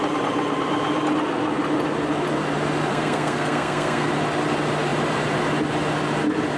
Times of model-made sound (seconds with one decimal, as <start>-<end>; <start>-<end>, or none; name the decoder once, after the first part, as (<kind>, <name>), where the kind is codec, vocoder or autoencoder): 2.9-4.1 (codec, SNAC)